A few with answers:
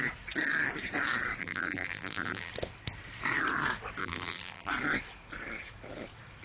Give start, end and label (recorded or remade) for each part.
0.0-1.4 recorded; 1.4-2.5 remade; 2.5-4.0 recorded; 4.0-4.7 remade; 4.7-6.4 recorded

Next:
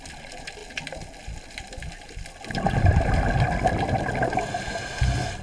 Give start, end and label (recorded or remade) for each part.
0.0-5.4 recorded